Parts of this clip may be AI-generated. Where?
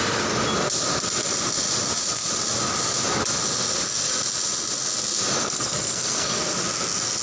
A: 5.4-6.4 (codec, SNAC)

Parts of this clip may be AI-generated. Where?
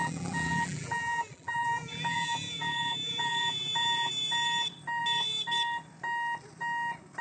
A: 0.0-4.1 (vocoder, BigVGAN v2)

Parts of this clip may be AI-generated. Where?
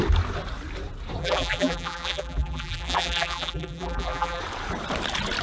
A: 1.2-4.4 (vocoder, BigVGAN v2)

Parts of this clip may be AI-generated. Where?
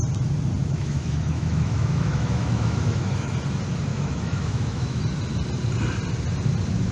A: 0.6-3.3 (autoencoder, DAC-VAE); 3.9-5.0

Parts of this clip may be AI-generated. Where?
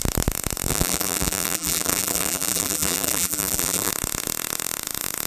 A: 0.7-3.9 (vocoder, BigVGAN v2)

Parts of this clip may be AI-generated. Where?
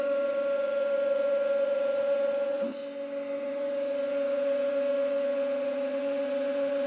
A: 0.0-2.8 (vocoder, Vocos); 3.4-6.9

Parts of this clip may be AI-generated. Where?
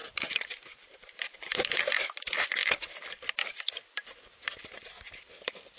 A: 0.0-1.5 (vocoder, BigVGAN v2)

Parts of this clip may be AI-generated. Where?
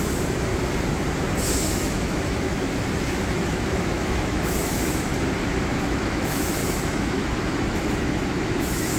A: 0.0-0.5 (autoencoder, DAC-VAE); 1.5-5.1; 5.6-9.0